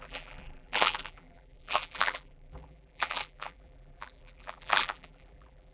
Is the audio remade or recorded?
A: remade